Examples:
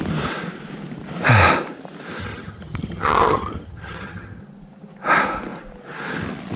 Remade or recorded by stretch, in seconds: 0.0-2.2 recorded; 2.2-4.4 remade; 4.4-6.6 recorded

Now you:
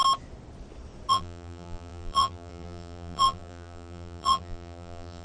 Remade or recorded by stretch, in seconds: 0.0-1.1 recorded; 1.1-5.2 remade